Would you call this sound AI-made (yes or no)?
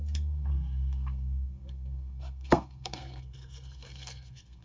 yes